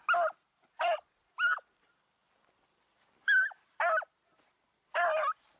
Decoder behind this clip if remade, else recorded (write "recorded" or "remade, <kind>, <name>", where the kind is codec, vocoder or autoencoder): recorded